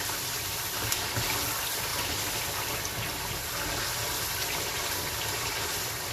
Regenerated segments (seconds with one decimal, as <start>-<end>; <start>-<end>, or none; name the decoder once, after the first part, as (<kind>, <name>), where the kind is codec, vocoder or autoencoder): none